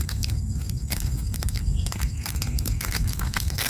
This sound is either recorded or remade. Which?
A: remade